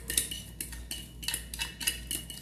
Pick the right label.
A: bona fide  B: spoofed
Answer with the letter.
A